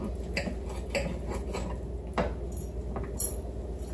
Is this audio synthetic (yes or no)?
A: no